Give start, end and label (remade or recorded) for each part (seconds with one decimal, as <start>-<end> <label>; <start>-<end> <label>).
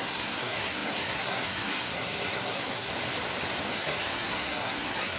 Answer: 0.0-2.9 remade; 2.9-3.7 recorded; 3.7-5.2 remade